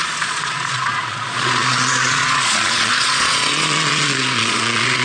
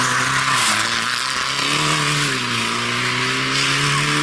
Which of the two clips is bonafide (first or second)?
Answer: second